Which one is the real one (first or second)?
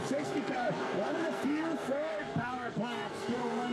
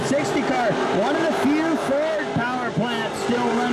second